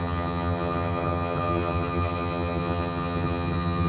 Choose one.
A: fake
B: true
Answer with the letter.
A